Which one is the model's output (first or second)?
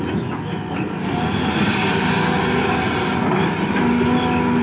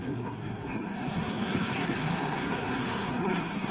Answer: second